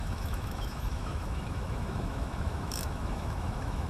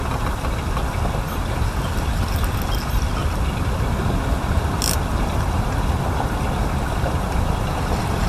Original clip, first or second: second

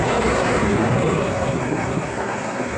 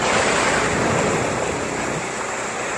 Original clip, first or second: second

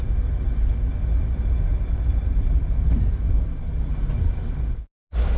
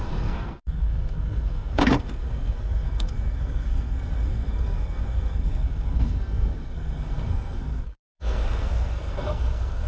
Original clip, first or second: first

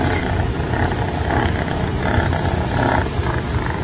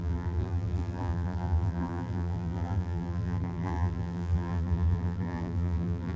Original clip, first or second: first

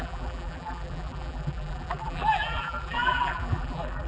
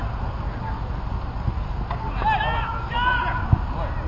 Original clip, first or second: second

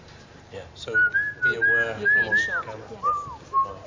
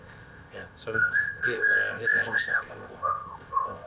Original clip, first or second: first